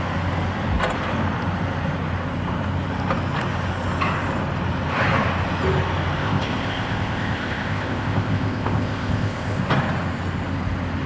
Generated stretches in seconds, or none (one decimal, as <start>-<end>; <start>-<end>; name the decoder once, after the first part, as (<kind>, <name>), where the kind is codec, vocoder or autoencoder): 6.2-9.6 (codec, ZipCodec)